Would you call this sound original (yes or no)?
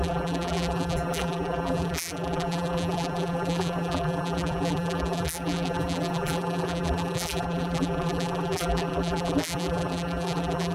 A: no